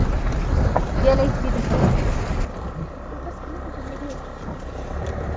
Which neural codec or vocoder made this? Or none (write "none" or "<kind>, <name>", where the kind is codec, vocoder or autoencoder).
none